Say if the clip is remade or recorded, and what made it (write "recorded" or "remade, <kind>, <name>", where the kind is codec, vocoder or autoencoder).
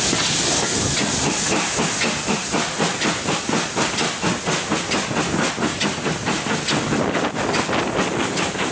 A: recorded